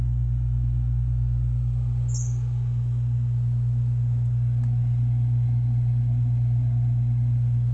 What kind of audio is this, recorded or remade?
recorded